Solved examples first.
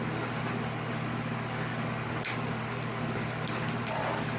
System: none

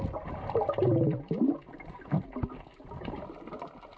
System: none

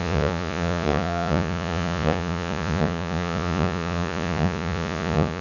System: vocoder, Vocos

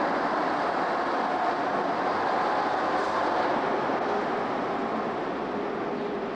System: none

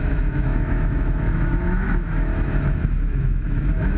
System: autoencoder, DAC-VAE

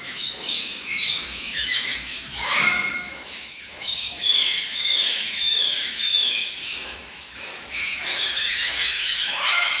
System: autoencoder, DAC-VAE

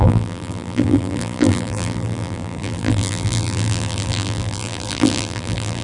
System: vocoder, BigVGAN v2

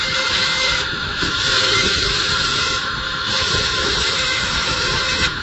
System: autoencoder, DAC-VAE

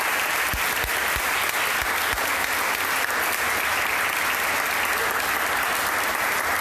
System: none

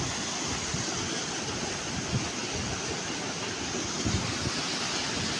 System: none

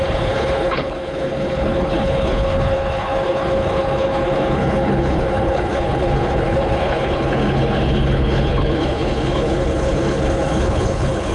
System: codec, HILCodec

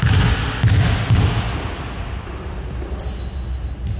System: none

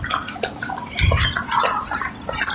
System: none